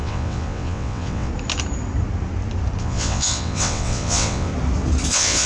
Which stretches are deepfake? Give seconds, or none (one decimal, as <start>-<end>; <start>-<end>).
0.0-1.3; 2.8-4.5; 5.1-5.5